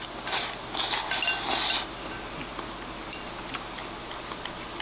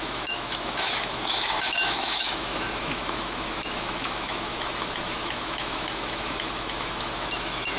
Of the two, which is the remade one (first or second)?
second